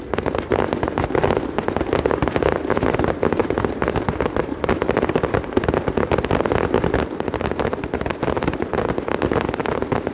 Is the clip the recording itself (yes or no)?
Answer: yes